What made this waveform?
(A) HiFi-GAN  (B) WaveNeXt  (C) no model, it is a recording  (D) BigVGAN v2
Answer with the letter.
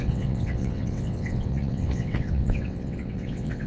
B